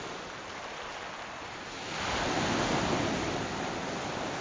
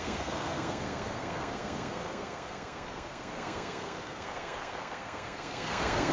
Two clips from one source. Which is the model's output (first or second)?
second